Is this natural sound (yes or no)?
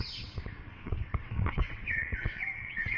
no